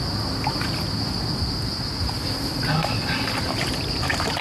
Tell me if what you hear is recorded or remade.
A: recorded